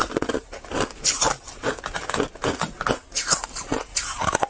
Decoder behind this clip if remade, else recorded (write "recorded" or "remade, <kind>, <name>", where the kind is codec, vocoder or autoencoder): recorded